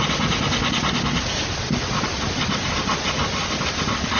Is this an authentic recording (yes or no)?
yes